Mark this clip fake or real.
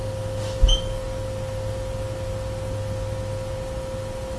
real